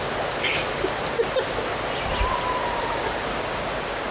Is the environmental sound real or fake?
real